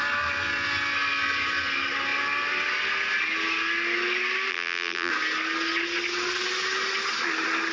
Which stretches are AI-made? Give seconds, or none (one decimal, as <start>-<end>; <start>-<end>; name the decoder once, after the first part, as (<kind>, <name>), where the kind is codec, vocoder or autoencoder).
4.5-5.1 (vocoder, BigVGAN v2)